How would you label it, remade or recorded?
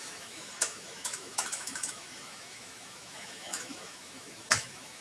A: remade